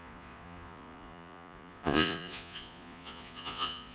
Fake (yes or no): yes